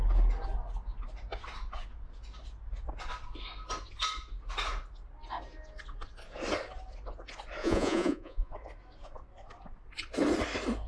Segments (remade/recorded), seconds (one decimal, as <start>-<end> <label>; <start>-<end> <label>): 0.0-7.6 recorded; 7.6-8.5 remade; 8.5-10.9 recorded